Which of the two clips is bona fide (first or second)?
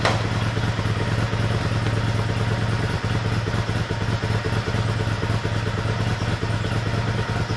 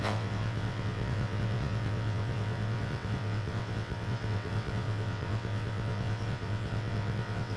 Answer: first